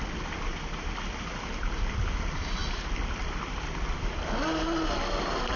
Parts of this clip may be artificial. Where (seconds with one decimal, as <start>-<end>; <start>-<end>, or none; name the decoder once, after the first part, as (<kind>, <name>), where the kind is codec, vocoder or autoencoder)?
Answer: none